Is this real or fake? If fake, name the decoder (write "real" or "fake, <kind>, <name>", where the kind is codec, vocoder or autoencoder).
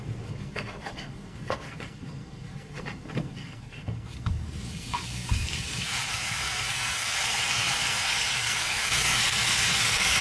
fake, codec, SNAC